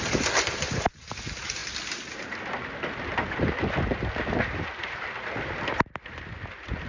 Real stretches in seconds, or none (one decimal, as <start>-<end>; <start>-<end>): 0.0-6.9